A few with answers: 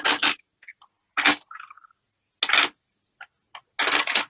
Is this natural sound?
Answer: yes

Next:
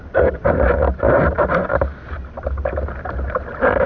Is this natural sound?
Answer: yes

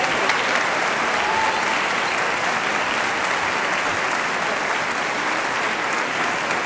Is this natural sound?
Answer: yes